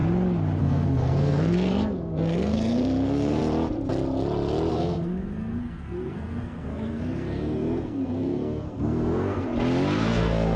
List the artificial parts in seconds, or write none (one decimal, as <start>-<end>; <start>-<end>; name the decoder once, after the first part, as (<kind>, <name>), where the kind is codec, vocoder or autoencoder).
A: 0.6-3.4 (codec, SNAC); 4.7-9.5; 10.0-10.6